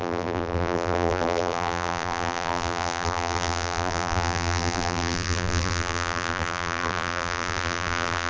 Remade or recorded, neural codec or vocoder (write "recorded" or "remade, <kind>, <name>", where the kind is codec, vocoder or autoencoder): remade, vocoder, BigVGAN v2